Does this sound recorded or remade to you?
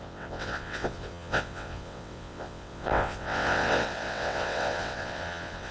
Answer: remade